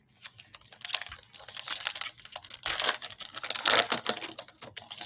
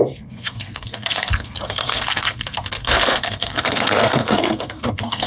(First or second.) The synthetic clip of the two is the second